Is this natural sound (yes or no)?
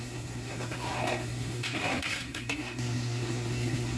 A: no